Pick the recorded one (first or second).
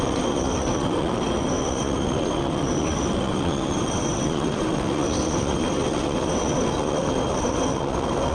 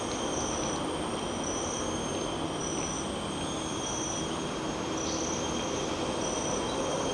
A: second